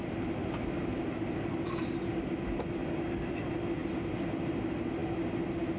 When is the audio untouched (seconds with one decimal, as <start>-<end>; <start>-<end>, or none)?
0.0-5.8